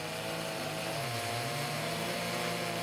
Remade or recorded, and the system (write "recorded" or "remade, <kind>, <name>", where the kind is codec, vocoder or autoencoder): remade, vocoder, BigVGAN v2